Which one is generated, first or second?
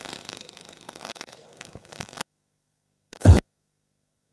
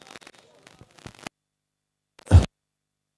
first